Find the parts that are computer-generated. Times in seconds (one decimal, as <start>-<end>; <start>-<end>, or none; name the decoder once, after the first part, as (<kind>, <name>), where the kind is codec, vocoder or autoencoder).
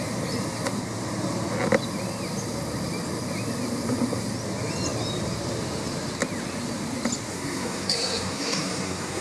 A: 7.3-9.2 (codec, SNAC)